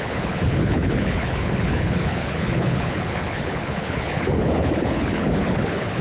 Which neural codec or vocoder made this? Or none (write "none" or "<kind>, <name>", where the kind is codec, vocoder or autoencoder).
codec, HILCodec